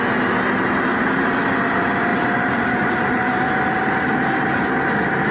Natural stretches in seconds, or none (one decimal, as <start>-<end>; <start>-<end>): 0.0-0.9; 1.4-2.1; 3.6-5.3